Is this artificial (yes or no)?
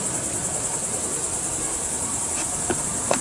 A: no